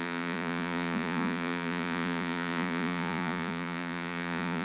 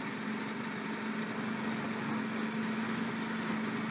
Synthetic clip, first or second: first